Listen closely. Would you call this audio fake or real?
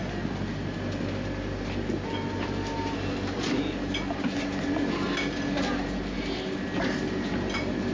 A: real